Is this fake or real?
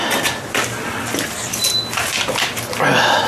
real